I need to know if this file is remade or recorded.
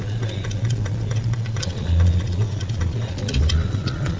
remade